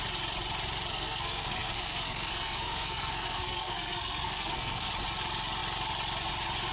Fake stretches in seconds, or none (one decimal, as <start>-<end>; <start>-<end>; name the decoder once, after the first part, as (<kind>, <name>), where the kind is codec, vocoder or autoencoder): 0.9-4.9 (codec, SNAC)

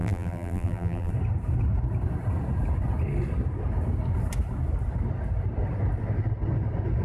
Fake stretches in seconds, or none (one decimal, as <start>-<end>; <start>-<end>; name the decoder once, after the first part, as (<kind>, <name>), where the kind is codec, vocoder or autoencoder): 0.0-1.1 (vocoder, BigVGAN v2)

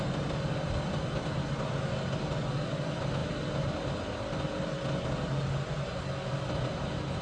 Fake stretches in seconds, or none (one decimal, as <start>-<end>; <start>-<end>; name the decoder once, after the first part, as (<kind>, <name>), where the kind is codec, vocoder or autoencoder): none

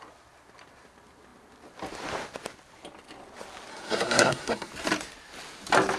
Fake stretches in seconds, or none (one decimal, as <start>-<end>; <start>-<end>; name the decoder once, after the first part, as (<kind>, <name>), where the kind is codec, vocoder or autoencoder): 3.7-4.7 (codec, SNAC)

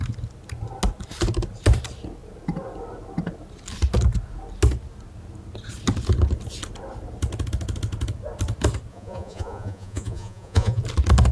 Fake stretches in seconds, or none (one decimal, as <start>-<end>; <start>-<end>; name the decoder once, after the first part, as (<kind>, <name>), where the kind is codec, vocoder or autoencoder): 8.9-10.8 (vocoder, Vocos)

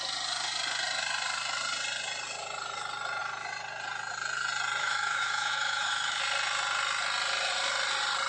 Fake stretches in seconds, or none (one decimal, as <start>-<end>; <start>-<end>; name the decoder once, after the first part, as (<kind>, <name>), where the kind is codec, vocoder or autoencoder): 4.8-6.2 (autoencoder, DAC-VAE)